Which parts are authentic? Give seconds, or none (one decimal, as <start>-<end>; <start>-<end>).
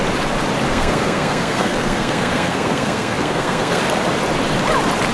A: 0.0-0.7; 3.8-5.1